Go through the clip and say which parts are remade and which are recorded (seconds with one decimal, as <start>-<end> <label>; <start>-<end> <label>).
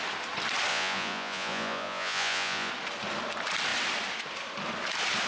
0.0-0.7 recorded; 0.7-2.7 remade; 2.7-5.3 recorded